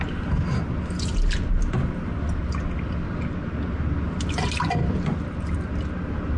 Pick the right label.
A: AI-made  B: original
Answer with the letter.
B